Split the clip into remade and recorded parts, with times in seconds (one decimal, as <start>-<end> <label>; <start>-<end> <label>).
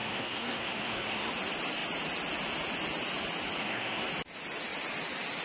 0.0-1.3 remade; 1.3-3.6 recorded; 3.6-4.1 remade; 4.1-5.4 recorded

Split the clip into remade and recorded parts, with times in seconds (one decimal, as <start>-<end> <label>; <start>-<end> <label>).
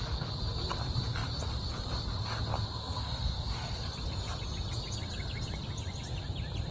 0.0-2.8 recorded; 2.8-3.9 remade; 3.9-6.7 recorded